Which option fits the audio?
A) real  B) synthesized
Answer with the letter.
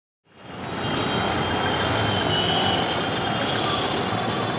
A